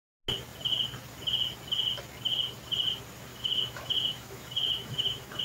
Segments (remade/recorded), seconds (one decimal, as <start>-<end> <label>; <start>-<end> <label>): 0.0-3.3 recorded; 3.3-5.4 remade